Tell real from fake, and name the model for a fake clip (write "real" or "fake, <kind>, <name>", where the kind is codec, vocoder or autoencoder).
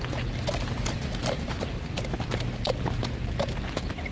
real